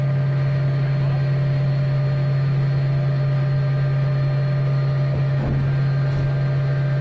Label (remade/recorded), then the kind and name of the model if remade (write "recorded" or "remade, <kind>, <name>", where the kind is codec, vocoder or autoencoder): recorded